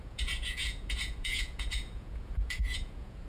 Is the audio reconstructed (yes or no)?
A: yes